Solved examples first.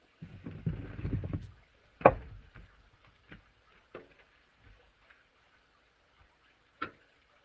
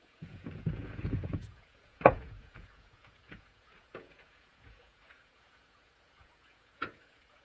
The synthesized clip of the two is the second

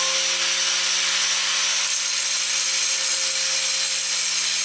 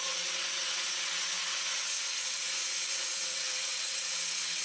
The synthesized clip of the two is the second